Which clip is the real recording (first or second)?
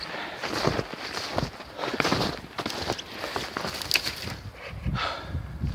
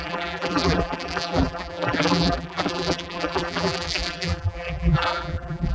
first